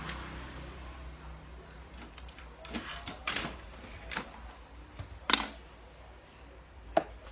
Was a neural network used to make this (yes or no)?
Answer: no